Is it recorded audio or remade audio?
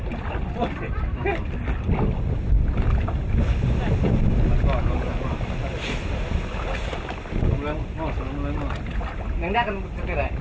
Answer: recorded